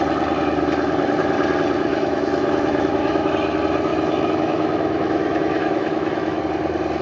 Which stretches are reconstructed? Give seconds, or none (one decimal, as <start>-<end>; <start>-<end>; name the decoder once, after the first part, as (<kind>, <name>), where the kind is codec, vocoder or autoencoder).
1.9-3.3 (autoencoder, DAC-VAE); 3.9-6.4